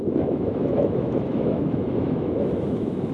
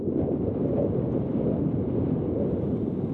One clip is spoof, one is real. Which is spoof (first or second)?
first